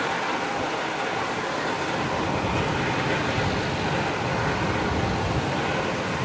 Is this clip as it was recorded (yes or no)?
yes